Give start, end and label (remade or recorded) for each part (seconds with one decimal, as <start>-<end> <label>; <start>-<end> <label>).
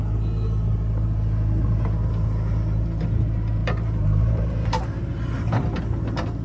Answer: 0.0-3.6 recorded; 3.6-5.0 remade; 5.0-6.4 recorded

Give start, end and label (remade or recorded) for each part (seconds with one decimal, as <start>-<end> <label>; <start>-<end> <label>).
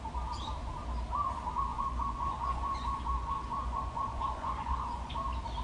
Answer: 0.0-1.7 recorded; 1.7-5.1 remade; 5.1-5.6 recorded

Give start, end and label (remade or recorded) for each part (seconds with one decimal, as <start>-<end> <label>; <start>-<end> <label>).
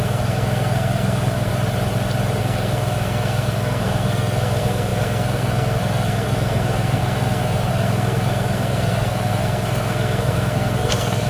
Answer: 0.0-1.5 remade; 1.5-2.4 recorded; 2.4-11.3 remade